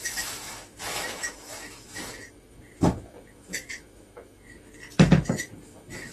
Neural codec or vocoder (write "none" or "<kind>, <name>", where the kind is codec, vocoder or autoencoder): autoencoder, DAC-VAE